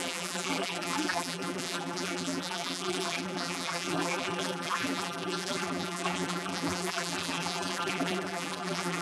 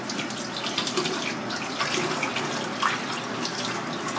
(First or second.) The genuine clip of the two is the second